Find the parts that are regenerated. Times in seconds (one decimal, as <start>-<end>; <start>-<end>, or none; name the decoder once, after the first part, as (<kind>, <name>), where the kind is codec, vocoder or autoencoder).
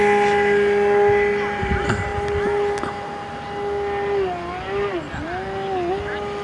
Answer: none